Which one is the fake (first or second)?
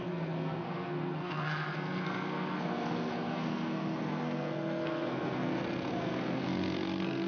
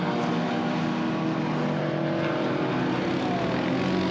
first